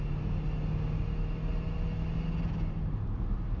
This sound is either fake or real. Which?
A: real